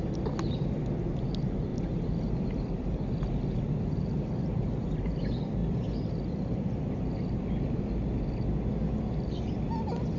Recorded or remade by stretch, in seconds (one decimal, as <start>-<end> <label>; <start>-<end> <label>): 0.0-10.2 recorded